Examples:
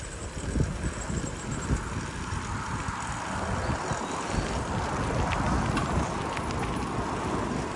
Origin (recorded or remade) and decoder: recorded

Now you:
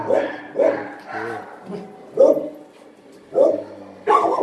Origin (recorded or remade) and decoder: recorded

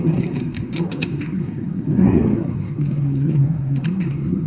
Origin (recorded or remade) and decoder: remade, codec, SNAC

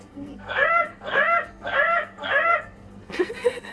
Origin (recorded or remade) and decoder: remade, codec, SNAC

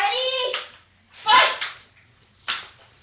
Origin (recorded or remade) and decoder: recorded